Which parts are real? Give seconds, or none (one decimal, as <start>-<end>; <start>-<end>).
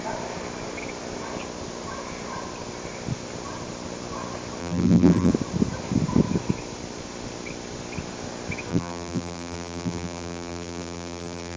0.0-4.6; 5.3-8.7